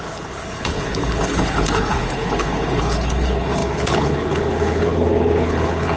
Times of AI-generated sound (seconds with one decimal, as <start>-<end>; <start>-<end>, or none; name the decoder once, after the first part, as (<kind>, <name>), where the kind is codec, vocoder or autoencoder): 0.0-6.0 (codec, HILCodec)